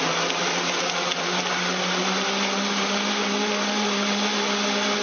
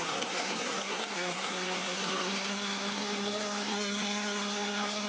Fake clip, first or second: second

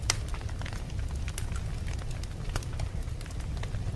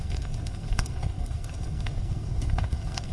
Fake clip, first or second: second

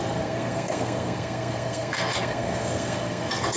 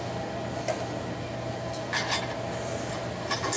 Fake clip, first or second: first